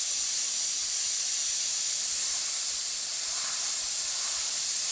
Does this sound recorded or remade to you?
recorded